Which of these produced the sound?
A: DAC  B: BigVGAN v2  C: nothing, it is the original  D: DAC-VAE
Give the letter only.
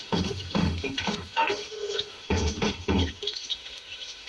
D